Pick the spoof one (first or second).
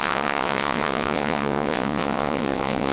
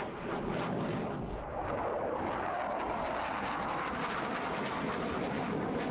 first